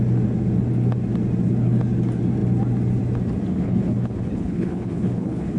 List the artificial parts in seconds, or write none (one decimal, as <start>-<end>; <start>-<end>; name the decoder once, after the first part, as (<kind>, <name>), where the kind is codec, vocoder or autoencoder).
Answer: 3.5-5.6 (codec, HILCodec)